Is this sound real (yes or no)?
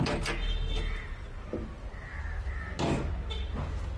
yes